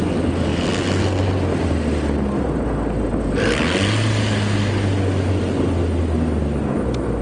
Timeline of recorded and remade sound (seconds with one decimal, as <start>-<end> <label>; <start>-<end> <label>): 0.0-7.2 recorded